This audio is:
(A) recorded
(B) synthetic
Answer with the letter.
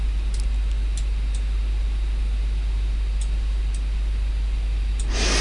A